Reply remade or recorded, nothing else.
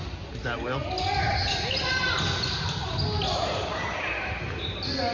recorded